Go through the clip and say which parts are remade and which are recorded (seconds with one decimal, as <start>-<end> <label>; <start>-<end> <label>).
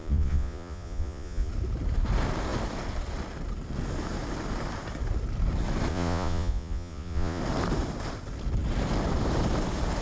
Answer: 0.0-1.5 remade; 1.5-5.9 recorded; 5.9-7.4 remade; 7.4-10.0 recorded